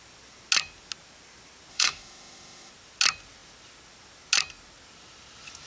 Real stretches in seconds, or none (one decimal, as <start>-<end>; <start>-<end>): 0.0-1.7; 2.7-5.7